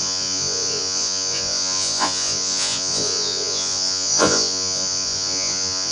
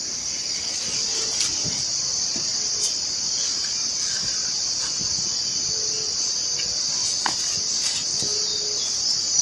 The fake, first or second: first